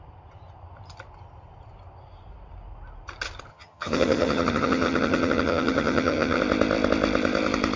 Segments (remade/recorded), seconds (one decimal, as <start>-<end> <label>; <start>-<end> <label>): 0.0-3.5 recorded; 3.5-6.4 remade; 6.4-7.8 recorded